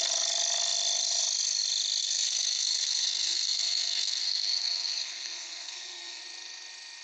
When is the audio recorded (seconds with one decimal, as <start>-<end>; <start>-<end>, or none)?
0.0-2.0; 6.2-7.0